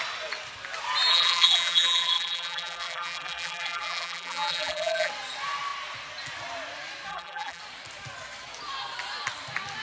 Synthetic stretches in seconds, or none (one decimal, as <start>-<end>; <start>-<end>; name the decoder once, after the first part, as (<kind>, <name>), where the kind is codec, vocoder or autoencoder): 1.1-5.1 (vocoder, BigVGAN v2); 7.1-7.6